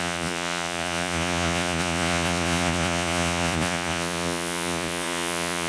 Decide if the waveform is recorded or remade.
remade